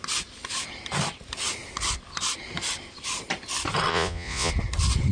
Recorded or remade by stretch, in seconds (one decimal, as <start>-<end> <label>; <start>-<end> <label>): 0.0-3.9 recorded; 3.9-4.5 remade; 4.5-5.1 recorded